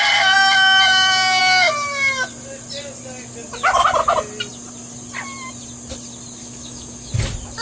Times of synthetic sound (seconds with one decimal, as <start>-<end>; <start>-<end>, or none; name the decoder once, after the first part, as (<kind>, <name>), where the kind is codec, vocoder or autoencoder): 6.4-7.1 (autoencoder, DAC-VAE)